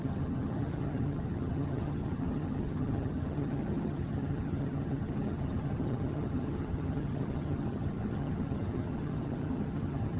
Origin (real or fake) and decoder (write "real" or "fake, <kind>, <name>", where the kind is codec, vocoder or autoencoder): fake, vocoder, HiFi-GAN